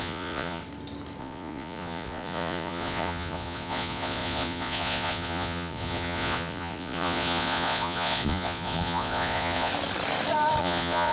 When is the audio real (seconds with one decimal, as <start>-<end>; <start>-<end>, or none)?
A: 0.6-1.2; 9.7-10.6